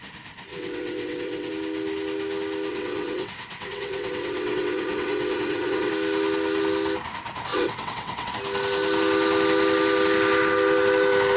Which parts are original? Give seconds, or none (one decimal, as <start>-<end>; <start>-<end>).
0.0-0.5; 1.5-2.7; 5.9-7.5; 8.3-11.4